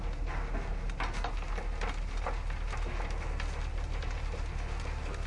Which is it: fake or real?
real